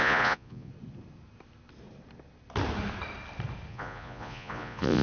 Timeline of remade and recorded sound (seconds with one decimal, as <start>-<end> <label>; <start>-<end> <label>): 0.0-0.7 remade; 0.7-3.7 recorded; 3.7-5.0 remade